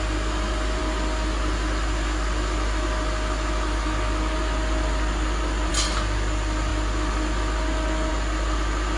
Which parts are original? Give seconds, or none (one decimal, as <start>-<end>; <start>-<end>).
0.0-9.0